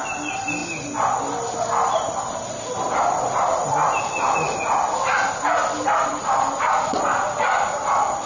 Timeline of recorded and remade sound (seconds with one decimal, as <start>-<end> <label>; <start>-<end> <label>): 0.0-5.6 remade; 5.6-6.1 recorded; 6.1-8.3 remade